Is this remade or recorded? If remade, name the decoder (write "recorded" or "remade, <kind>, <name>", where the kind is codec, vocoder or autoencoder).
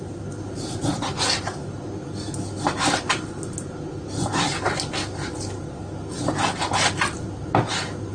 recorded